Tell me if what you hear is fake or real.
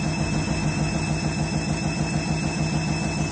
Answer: real